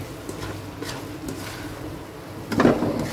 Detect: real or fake real